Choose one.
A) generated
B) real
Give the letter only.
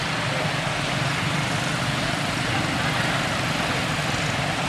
B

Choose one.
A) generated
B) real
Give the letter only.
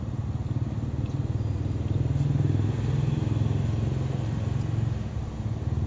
B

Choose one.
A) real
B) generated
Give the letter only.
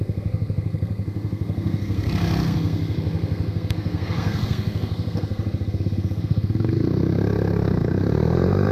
B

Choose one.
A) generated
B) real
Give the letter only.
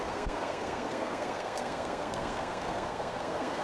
A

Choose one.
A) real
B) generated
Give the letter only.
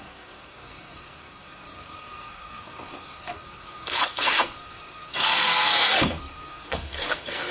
B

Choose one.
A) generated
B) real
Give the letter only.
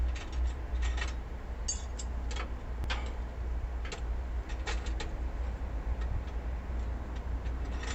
B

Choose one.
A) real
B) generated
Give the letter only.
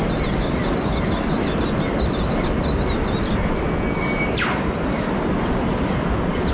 A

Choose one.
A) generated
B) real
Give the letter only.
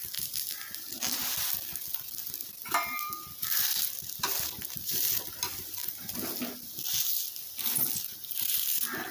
A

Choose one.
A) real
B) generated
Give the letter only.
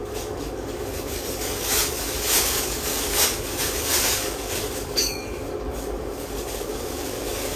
B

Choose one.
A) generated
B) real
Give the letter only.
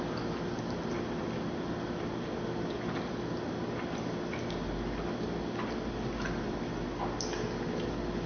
B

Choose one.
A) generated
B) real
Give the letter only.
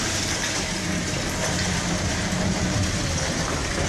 A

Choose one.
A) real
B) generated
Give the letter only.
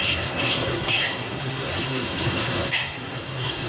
B